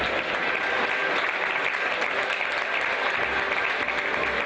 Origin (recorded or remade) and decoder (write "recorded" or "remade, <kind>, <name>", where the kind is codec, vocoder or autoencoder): recorded